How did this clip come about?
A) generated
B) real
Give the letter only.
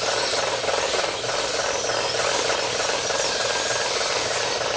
B